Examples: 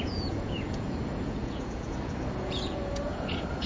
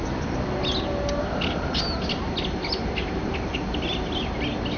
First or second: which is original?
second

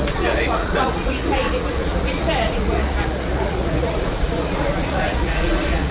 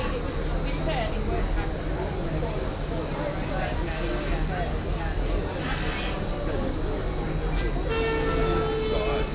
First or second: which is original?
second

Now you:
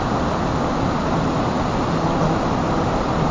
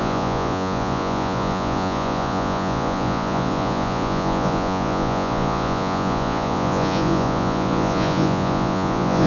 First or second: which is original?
first